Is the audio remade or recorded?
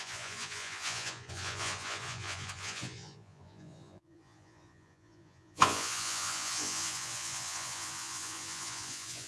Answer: remade